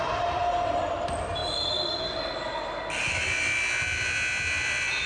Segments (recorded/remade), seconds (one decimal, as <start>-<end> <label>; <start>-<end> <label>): 0.0-1.4 remade; 1.4-4.5 recorded; 4.5-5.1 remade